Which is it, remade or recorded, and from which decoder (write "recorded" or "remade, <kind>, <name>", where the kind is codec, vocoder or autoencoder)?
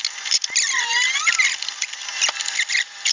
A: recorded